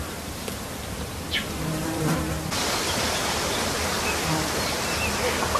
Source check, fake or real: fake